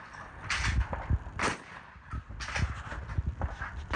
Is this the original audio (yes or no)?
yes